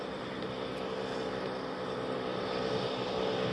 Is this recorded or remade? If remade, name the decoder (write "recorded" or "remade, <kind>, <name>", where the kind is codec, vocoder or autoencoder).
recorded